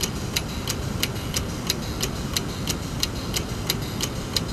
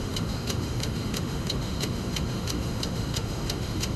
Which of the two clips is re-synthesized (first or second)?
second